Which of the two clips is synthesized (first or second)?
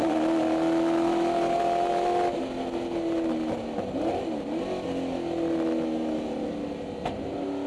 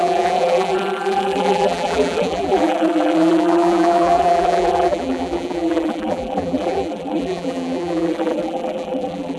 second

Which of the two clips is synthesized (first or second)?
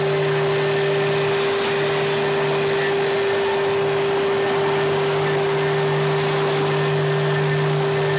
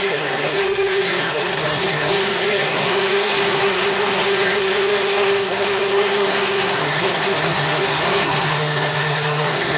second